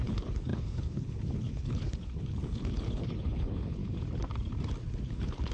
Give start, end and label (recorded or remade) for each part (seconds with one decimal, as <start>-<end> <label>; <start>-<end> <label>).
0.0-3.8 remade; 3.8-5.0 recorded; 5.0-5.5 remade